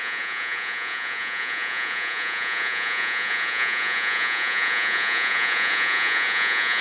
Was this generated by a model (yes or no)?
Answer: yes